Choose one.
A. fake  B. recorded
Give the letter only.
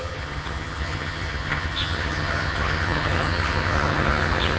A